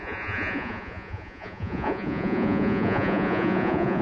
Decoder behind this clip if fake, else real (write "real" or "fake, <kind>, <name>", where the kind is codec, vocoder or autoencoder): fake, vocoder, Vocos